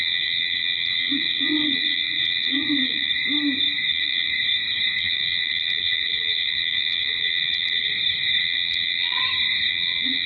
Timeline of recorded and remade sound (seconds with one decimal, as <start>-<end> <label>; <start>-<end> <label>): 0.0-3.1 remade; 3.1-3.9 recorded; 3.9-4.3 remade; 4.3-5.0 recorded; 5.0-7.9 remade; 7.9-8.4 recorded; 8.4-9.2 remade; 9.2-9.7 recorded; 9.7-10.3 remade